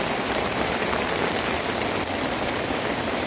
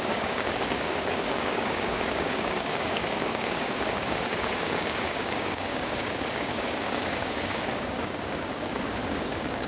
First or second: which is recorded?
first